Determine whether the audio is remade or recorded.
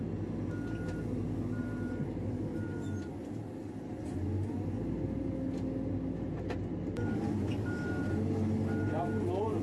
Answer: recorded